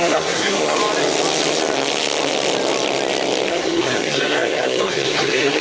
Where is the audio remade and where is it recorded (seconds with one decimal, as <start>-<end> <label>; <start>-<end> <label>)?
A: 0.0-0.8 remade; 0.8-3.5 recorded; 3.5-5.6 remade